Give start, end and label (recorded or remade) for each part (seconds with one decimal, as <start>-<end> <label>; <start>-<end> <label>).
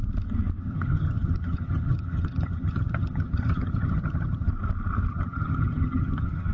0.0-0.6 recorded; 0.6-4.5 remade; 4.5-5.1 recorded; 5.1-6.5 remade